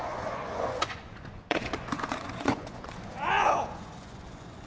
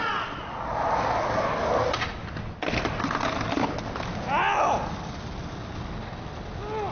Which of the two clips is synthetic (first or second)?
first